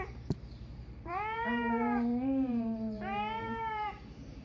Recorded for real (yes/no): no